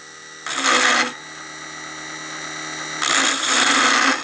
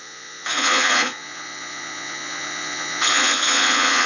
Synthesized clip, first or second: second